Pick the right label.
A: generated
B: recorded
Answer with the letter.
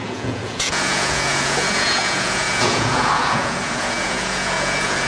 A